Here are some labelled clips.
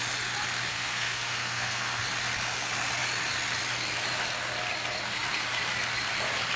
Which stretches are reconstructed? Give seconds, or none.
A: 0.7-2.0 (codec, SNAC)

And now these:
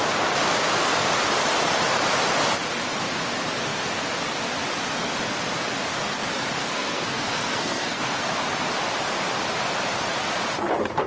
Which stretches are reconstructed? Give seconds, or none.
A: 6.6-8.3 (codec, SNAC)

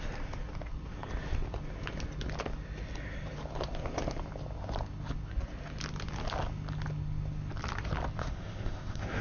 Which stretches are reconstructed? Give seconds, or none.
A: 8.2-9.2 (codec, SNAC)

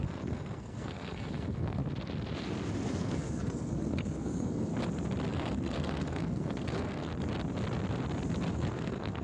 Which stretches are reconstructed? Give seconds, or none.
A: 0.0-1.8 (codec, SNAC); 2.9-4.7; 5.3-7.1; 8.5-9.2